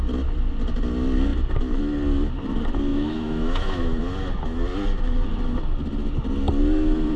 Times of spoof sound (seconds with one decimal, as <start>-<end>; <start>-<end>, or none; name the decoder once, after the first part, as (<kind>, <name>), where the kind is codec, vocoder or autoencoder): 2.9-4.0 (autoencoder, DAC-VAE)